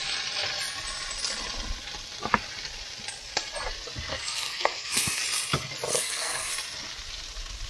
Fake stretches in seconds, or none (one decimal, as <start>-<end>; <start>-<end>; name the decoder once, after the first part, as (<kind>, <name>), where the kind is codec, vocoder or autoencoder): 4.1-5.2 (codec, SNAC); 5.9-6.5